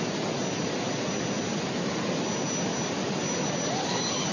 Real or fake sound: real